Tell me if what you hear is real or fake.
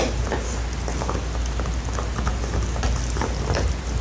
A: real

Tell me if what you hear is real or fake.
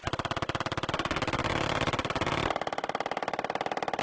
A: real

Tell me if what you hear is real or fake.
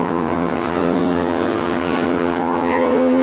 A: fake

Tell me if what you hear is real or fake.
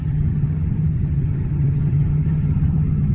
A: fake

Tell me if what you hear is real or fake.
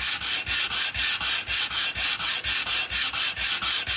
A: real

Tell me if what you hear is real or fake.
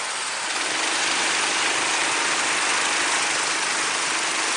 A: real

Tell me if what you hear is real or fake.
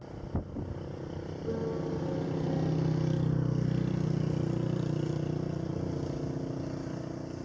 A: real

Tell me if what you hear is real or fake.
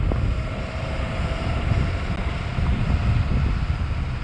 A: real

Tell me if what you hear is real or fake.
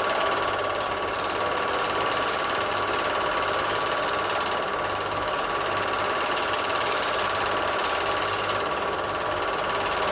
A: real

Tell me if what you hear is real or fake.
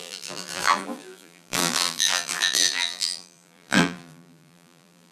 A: fake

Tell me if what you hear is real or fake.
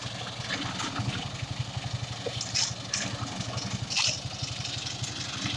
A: real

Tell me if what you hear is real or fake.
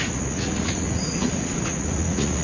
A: fake